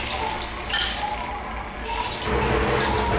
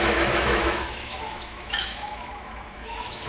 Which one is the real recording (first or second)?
first